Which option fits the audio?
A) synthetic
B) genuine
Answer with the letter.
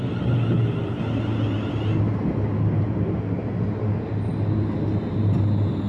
B